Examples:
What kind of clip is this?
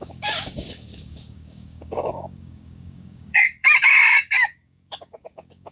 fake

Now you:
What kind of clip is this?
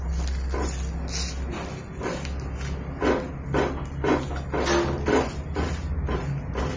real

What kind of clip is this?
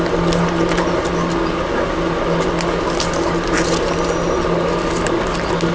real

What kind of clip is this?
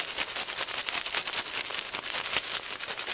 real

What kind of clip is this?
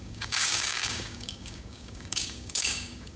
fake